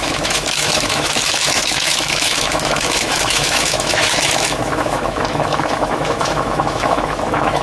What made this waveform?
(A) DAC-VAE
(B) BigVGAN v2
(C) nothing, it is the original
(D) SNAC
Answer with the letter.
A